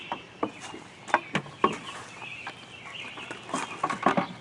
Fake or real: real